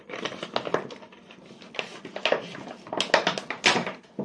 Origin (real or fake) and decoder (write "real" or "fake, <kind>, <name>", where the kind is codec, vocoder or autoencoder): real